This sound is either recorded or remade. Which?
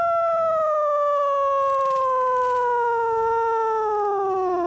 recorded